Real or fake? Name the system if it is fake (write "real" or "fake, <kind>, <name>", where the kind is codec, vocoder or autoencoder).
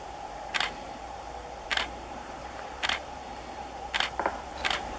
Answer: fake, vocoder, BigVGAN v2